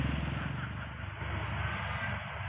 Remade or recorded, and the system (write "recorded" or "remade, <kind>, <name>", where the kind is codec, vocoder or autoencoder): recorded